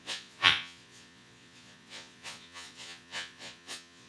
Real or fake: fake